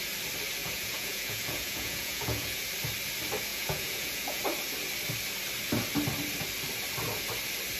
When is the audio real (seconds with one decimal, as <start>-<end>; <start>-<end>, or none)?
0.0-0.6; 2.7-3.5; 4.4-7.8